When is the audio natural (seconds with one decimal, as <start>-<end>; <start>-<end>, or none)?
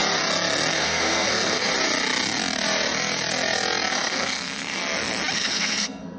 0.0-0.7; 1.7-3.9; 4.8-5.3